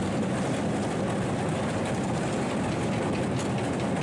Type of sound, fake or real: real